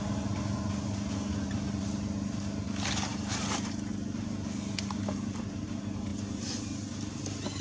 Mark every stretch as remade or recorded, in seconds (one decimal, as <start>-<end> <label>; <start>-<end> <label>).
0.0-3.1 recorded; 3.1-3.7 remade; 3.7-7.6 recorded

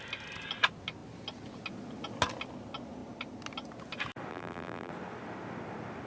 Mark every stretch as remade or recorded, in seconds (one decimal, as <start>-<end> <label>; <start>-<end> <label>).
0.0-4.3 recorded; 4.3-4.9 remade; 4.9-6.1 recorded